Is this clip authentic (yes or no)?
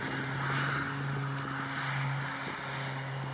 yes